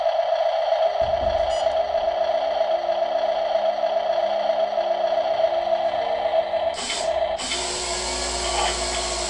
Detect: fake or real real